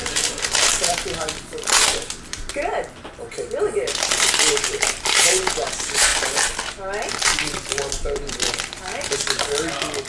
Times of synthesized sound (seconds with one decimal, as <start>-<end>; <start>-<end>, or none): 0.7-5.2